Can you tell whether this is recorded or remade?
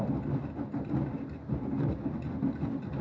recorded